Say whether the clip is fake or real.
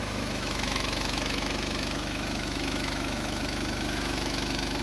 fake